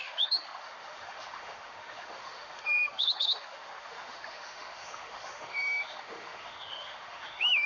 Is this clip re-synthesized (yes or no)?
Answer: yes